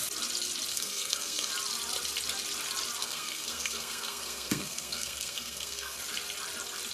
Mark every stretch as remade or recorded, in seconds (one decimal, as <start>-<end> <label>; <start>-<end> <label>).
0.0-0.7 recorded; 0.7-1.5 remade; 1.5-3.0 recorded; 3.0-6.0 remade; 6.0-6.9 recorded